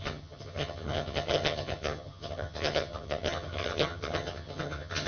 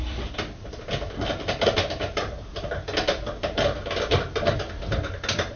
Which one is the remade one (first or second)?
first